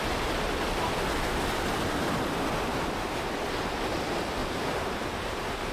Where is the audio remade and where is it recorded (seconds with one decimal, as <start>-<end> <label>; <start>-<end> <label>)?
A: 0.0-2.7 recorded; 2.7-3.2 remade; 3.2-4.4 recorded; 4.4-5.7 remade